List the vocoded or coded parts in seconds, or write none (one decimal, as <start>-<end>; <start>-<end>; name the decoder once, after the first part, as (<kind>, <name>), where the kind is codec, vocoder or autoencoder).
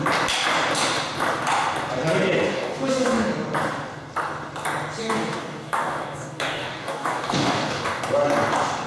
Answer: 2.5-3.3 (codec, DAC); 5.0-8.0